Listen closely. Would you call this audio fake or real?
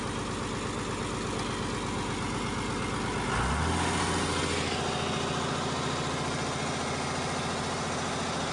real